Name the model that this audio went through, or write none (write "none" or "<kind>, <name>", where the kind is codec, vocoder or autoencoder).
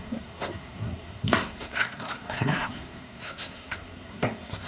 codec, SNAC